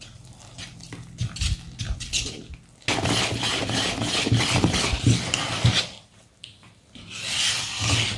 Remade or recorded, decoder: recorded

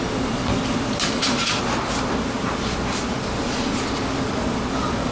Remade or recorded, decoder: remade, vocoder, BigVGAN v2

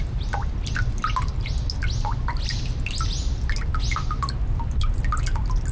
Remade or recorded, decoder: recorded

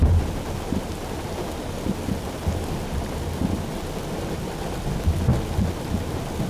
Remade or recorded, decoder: recorded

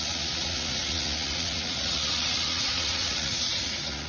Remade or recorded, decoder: remade, vocoder, Vocos